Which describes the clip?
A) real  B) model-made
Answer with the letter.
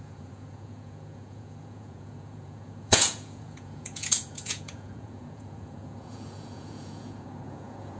B